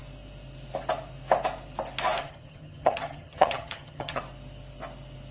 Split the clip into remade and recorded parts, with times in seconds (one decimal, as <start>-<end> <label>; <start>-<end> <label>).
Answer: 0.0-2.2 recorded; 2.2-4.2 remade; 4.2-5.3 recorded